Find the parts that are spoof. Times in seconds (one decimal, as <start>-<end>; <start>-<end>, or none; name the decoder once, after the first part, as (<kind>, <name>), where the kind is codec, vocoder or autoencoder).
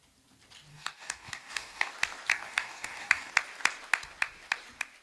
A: 0.7-1.9 (codec, DAC); 2.3-3.3